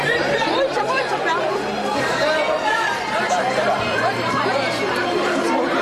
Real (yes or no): no